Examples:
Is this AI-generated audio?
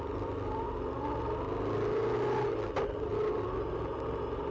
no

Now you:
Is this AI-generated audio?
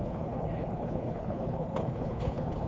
yes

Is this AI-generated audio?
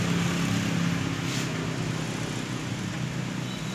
no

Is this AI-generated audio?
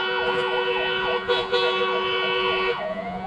yes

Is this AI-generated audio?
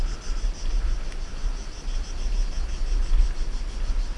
no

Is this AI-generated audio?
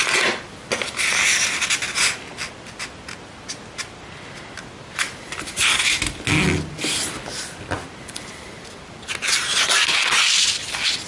no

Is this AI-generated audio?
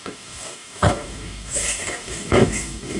yes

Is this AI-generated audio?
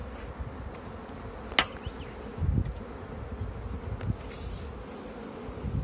no